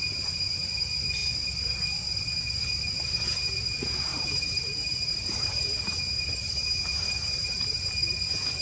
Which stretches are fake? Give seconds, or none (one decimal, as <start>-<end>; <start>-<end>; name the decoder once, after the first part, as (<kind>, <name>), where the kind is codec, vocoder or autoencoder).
4.1-7.9 (vocoder, BigVGAN v2)